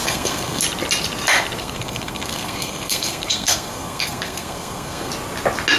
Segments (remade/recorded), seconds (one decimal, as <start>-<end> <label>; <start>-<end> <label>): 0.0-0.6 remade; 0.6-1.6 recorded; 1.6-5.1 remade; 5.1-5.8 recorded